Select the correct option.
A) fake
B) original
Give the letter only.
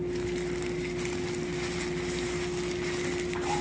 B